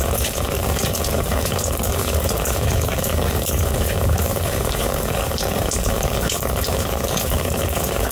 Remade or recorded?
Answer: remade